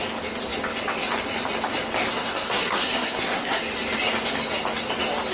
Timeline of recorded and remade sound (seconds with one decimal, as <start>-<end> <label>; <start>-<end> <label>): 0.0-2.1 recorded; 2.1-3.6 remade; 3.6-5.3 recorded